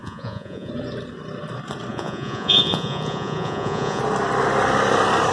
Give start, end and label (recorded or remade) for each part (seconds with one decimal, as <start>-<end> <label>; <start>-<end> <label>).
0.0-0.7 remade; 0.7-1.9 recorded; 1.9-4.0 remade; 4.0-5.3 recorded